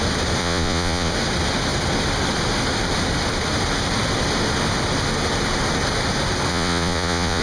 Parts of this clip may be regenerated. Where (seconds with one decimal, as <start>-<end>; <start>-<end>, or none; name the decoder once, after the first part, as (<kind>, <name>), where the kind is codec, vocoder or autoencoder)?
0.4-1.1 (vocoder, Vocos); 6.5-7.4